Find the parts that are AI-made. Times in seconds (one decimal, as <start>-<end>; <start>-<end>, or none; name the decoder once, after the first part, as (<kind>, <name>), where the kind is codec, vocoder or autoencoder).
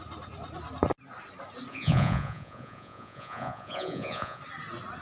1.7-4.4 (vocoder, Vocos)